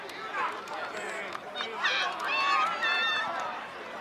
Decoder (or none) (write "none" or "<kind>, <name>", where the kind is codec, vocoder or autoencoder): none